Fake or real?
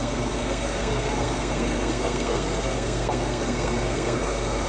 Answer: fake